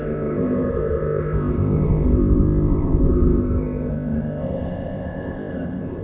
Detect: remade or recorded remade